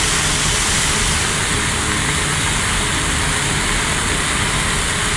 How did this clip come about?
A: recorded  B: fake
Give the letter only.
A